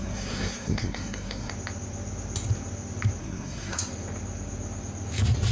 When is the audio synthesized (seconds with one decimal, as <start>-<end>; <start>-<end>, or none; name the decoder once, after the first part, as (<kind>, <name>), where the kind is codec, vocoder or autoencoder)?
0.0-1.5 (codec, SNAC); 3.2-3.9